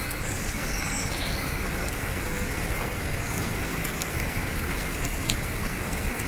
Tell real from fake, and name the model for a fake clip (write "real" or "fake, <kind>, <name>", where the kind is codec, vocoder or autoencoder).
fake, codec, SNAC